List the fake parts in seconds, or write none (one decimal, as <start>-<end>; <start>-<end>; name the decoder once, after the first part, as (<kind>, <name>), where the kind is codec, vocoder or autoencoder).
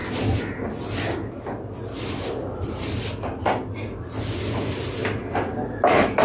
none